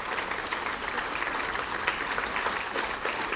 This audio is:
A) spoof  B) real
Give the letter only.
B